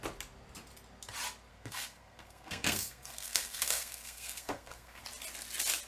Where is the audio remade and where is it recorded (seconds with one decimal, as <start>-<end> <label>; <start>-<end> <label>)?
0.0-1.5 recorded; 1.5-5.0 remade; 5.0-5.9 recorded